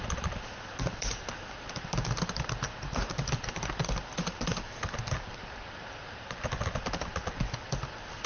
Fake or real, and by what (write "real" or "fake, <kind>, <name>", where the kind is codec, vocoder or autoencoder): real